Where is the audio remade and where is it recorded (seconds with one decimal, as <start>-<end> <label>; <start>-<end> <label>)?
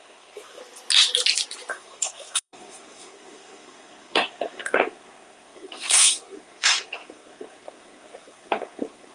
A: 0.0-0.6 remade; 0.6-1.7 recorded; 1.7-9.1 remade